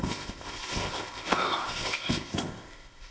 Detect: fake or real fake